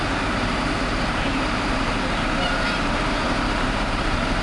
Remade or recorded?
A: remade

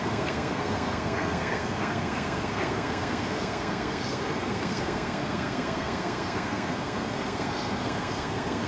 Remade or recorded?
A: remade